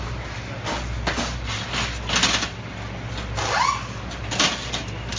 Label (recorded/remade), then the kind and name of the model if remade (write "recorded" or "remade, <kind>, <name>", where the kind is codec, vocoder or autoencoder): recorded